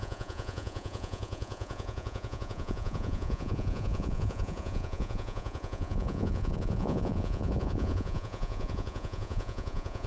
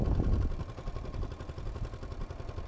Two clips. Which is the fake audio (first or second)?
first